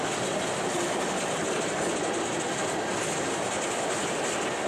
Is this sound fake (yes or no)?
no